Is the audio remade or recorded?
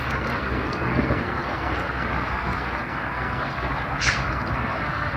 remade